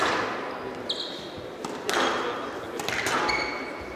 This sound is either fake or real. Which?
real